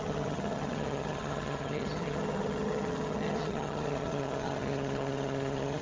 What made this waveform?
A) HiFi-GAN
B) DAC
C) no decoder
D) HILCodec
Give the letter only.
A